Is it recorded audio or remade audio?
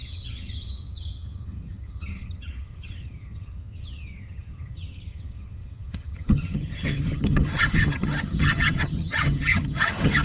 remade